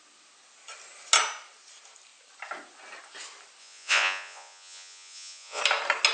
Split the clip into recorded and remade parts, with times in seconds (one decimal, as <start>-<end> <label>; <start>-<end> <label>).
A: 0.0-3.6 recorded; 3.6-5.6 remade; 5.6-6.1 recorded